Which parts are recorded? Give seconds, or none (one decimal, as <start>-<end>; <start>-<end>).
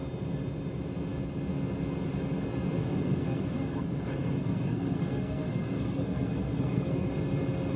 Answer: 0.0-2.8; 7.1-7.8